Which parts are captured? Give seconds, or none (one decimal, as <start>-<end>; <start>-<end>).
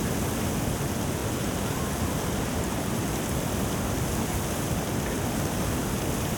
0.0-1.2; 3.8-6.4